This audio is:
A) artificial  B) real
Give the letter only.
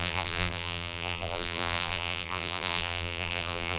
A